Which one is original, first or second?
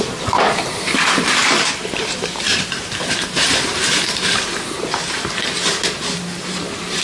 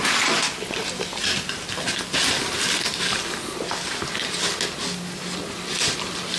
second